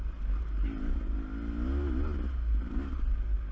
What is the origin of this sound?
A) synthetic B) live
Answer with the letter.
B